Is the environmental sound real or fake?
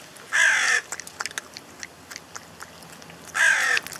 real